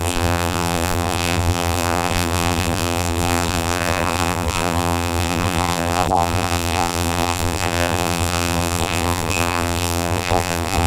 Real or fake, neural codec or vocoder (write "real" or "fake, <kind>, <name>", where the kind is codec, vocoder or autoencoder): fake, vocoder, BigVGAN v2